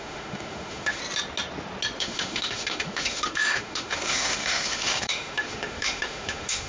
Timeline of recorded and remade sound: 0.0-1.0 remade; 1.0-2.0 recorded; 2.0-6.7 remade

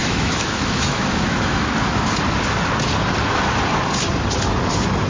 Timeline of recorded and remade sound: 0.0-2.1 remade; 2.1-5.1 recorded

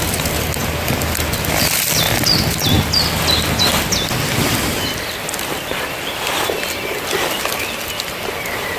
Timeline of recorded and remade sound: 0.0-8.8 recorded

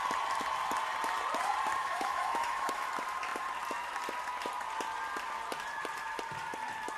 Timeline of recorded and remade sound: 0.0-1.8 recorded; 1.8-2.9 remade; 2.9-7.0 recorded